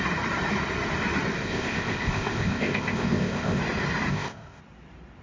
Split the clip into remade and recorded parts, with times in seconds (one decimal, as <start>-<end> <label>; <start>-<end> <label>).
0.0-1.4 recorded; 1.4-3.6 remade; 3.6-4.1 recorded; 4.1-4.6 remade; 4.6-5.2 recorded